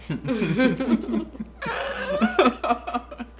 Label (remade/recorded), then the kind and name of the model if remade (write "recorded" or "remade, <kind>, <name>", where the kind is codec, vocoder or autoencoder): recorded